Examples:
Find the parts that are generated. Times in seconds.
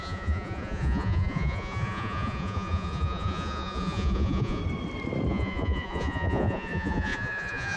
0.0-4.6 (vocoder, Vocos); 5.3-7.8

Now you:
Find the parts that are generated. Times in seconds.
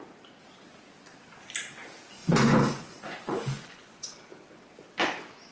2.2-4.1 (vocoder, Vocos)